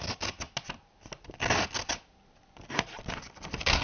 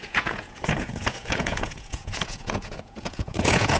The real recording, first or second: first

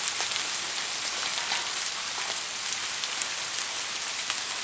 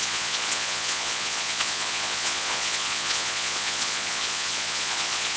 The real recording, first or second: first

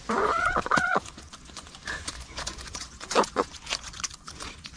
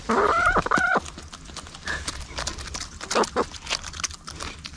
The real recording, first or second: second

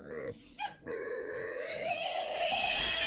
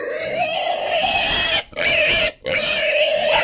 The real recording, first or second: second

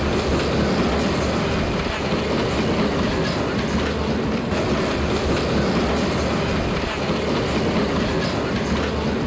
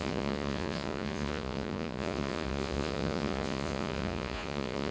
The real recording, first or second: first